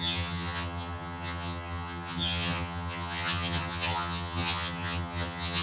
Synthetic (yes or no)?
yes